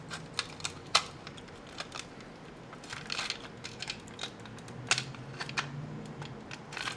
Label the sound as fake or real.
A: real